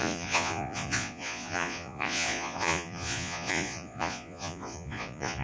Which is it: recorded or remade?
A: remade